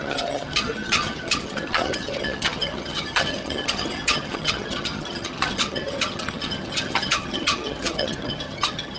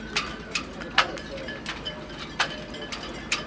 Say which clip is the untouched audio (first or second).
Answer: second